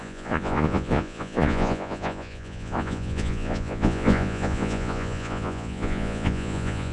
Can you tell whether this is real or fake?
fake